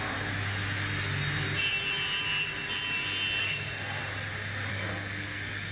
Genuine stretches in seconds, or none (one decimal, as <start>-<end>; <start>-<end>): 0.0-3.4; 4.0-4.7